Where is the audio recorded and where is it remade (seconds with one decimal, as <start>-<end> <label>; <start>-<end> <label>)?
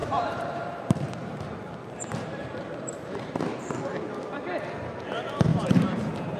0.0-3.8 remade; 3.8-5.5 recorded; 5.5-6.4 remade